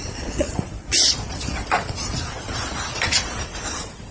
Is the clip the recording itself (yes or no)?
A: no